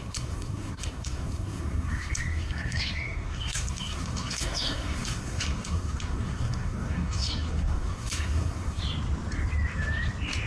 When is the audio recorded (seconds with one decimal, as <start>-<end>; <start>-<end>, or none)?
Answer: 8.8-10.5